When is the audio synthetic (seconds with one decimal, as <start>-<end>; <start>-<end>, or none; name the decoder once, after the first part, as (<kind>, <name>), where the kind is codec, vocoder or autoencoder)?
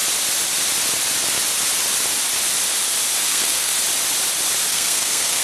3.2-3.7 (codec, SNAC); 4.7-5.4